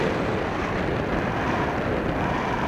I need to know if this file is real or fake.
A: real